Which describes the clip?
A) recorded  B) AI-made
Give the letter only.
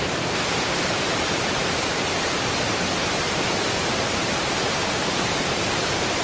B